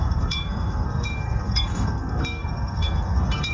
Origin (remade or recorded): remade